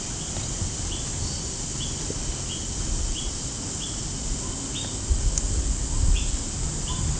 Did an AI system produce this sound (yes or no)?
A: no